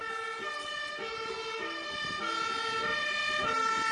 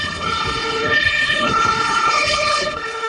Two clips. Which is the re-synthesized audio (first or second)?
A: second